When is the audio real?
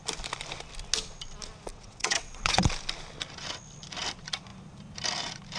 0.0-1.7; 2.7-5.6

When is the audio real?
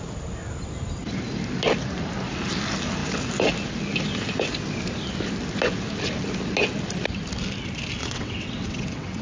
0.0-8.0